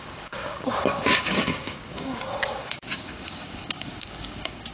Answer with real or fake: fake